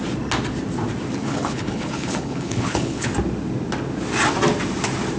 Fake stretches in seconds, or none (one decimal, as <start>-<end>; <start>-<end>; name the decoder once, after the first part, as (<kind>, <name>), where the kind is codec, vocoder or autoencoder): 1.2-3.1 (codec, HILCodec)